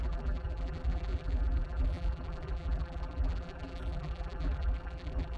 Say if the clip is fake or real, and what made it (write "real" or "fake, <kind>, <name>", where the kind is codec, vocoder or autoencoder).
fake, vocoder, BigVGAN v2